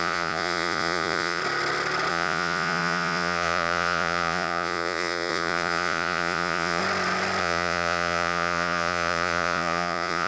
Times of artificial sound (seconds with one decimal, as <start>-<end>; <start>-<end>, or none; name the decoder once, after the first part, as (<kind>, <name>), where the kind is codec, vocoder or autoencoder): 0.0-1.4 (vocoder, Vocos); 2.1-6.8; 7.4-10.3